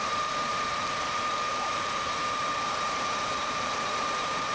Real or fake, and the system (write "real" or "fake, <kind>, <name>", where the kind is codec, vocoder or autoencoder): fake, vocoder, BigVGAN v2